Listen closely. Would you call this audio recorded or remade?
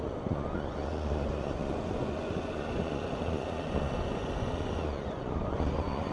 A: remade